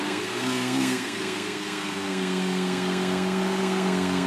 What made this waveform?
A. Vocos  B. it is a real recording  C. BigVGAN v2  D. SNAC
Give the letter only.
D